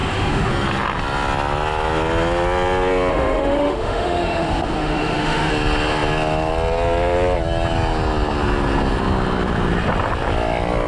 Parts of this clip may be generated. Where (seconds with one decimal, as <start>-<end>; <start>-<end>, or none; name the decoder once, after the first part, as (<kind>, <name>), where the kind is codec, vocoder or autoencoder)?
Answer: 0.0-0.5 (autoencoder, DAC-VAE); 3.1-5.5